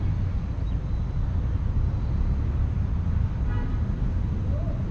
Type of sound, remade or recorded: recorded